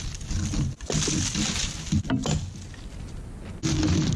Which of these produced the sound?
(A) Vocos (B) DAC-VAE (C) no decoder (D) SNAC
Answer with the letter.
C